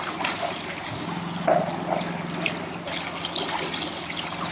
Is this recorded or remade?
recorded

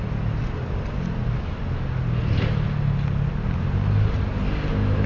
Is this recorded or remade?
recorded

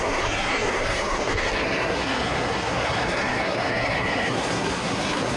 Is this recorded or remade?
remade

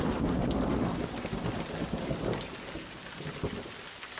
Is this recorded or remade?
recorded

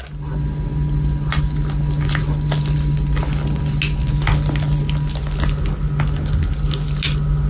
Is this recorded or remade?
recorded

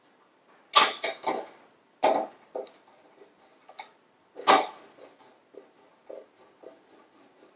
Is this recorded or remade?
recorded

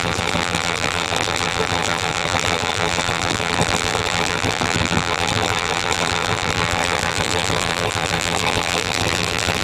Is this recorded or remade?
remade